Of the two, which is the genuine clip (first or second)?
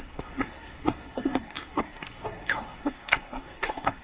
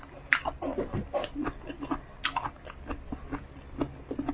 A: second